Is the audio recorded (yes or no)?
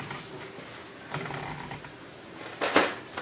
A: yes